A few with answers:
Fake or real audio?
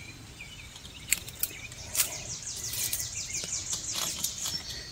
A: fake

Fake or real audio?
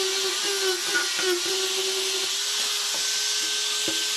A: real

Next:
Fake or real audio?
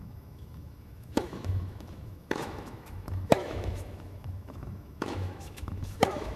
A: fake